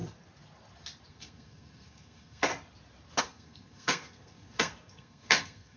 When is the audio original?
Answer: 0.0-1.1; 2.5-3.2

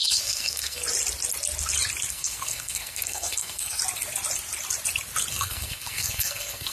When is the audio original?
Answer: 0.8-2.1; 3.8-5.3

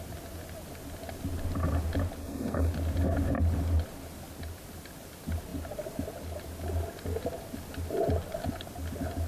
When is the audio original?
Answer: 0.0-2.2; 2.7-9.3